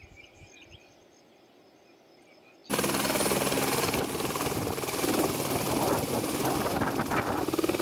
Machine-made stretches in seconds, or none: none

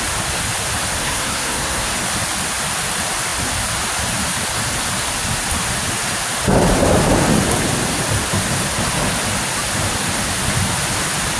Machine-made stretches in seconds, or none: 1.0-1.9 (codec, SNAC)

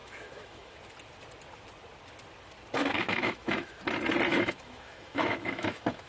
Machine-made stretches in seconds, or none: 0.0-0.8 (autoencoder, DAC-VAE); 2.8-3.8; 4.3-6.1